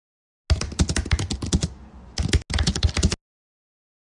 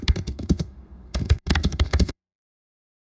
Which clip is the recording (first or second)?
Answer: first